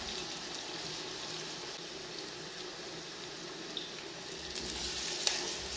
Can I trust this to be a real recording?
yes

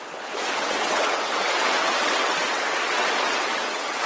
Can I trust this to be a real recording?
no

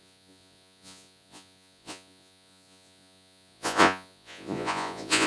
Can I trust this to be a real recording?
no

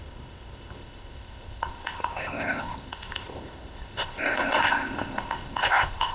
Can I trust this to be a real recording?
no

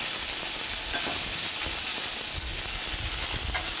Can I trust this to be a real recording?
yes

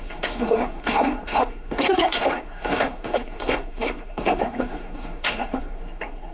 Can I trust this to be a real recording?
no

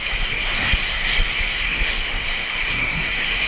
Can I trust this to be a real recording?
no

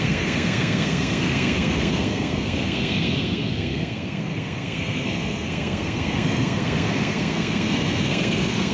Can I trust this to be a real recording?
no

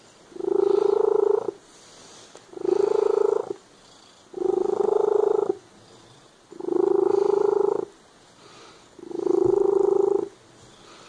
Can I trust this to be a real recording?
yes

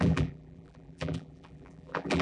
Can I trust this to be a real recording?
no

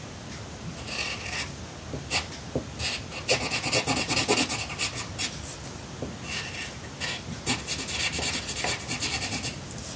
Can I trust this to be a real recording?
yes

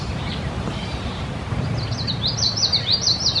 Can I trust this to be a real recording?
no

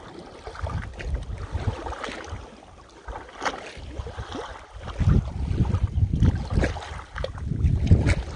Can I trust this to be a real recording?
yes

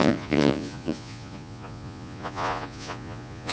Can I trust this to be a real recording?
no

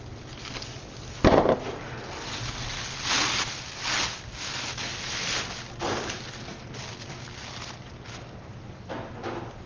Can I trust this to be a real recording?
yes